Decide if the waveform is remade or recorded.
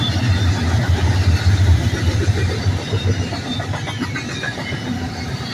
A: recorded